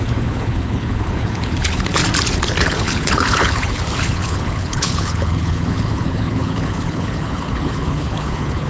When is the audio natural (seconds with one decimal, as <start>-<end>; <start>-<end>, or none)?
2.0-2.6